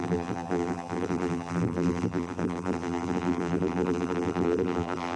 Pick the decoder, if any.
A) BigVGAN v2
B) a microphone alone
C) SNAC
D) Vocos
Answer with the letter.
A